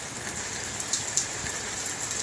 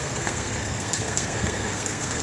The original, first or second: first